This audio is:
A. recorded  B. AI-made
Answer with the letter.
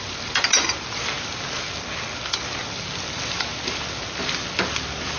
A